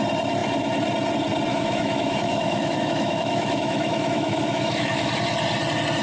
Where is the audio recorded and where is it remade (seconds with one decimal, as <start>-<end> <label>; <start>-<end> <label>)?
0.0-1.5 recorded; 1.5-5.1 remade; 5.1-6.0 recorded

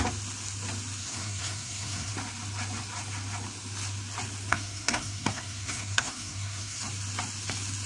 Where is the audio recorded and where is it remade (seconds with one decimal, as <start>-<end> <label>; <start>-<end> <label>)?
0.0-1.0 recorded; 1.0-2.1 remade; 2.1-4.5 recorded; 4.5-6.8 remade; 6.8-7.9 recorded

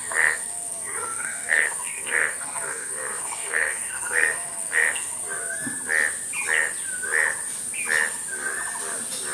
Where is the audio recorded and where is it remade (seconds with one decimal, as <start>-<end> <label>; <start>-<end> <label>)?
0.0-5.1 remade; 5.1-9.3 recorded

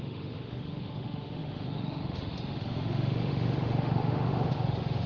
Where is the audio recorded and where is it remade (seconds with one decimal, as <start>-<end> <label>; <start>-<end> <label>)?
0.0-5.1 remade

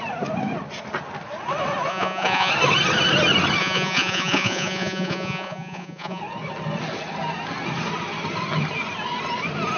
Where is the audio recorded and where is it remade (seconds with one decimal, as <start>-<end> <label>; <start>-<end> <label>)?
0.0-1.9 recorded; 1.9-2.5 remade; 2.5-3.6 recorded; 3.6-6.2 remade; 6.2-9.8 recorded

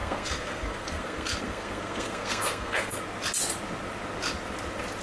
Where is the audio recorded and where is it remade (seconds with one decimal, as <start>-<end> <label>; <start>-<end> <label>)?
0.0-3.0 remade; 3.0-5.0 recorded

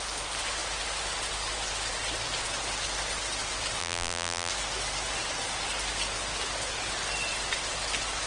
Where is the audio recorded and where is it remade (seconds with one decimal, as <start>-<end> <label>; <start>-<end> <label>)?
0.0-3.8 recorded; 3.8-4.5 remade; 4.5-8.3 recorded